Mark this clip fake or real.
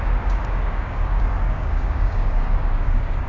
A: fake